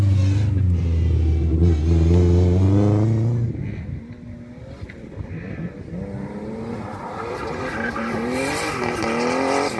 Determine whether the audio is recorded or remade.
recorded